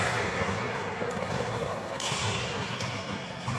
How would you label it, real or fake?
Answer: fake